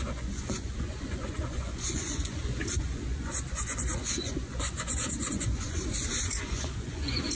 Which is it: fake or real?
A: fake